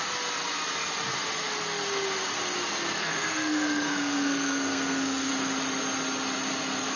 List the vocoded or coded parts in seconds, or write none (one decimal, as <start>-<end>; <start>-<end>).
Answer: 3.0-5.3